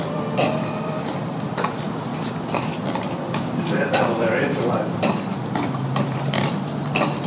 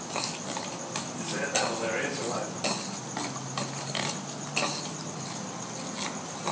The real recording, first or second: second